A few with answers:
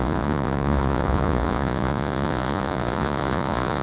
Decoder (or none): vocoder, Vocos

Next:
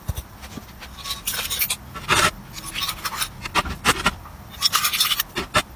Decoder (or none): none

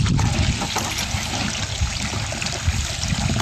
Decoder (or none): none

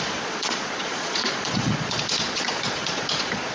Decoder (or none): vocoder, Vocos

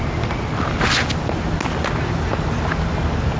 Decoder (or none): none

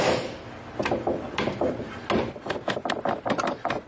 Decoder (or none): none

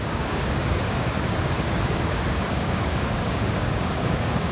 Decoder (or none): codec, DAC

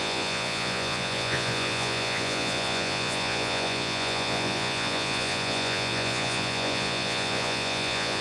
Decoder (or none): vocoder, Vocos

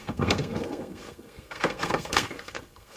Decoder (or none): codec, SNAC